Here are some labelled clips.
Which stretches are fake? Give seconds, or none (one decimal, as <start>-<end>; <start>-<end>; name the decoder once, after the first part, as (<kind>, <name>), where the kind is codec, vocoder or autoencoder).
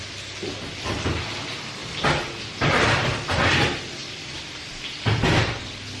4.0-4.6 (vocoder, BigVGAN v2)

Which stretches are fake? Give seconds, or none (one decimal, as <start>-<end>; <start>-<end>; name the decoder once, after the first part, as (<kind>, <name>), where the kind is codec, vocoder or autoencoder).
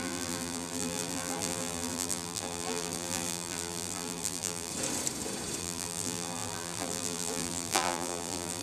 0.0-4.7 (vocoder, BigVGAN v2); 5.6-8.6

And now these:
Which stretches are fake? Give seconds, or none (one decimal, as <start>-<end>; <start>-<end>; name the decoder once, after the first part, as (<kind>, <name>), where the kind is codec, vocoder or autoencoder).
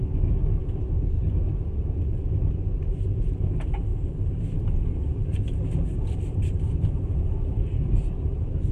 3.9-8.7 (vocoder, BigVGAN v2)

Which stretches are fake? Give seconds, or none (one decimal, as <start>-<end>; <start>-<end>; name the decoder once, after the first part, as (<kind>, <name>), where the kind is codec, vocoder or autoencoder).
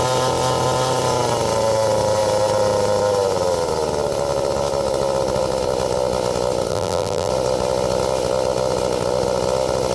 6.7-7.3 (vocoder, BigVGAN v2)